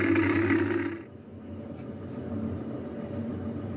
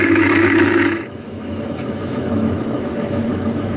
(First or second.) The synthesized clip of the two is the second